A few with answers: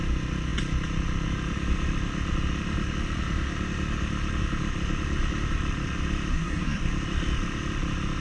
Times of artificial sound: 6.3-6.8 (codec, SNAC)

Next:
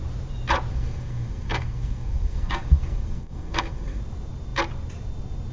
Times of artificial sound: 0.7-4.0 (codec, SNAC)

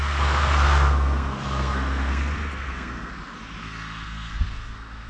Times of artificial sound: 0.0-3.1 (codec, SNAC); 3.6-5.1